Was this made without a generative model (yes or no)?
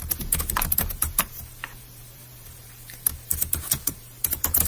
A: no